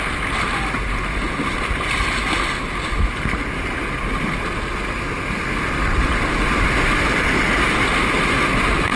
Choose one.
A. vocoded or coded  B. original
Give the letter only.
B